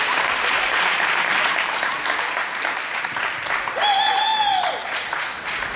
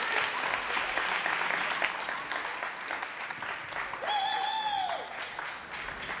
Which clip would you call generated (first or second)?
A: first